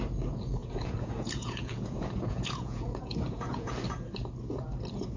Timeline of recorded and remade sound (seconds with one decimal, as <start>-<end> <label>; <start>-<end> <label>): 0.0-0.6 recorded; 0.6-3.7 remade; 3.7-5.2 recorded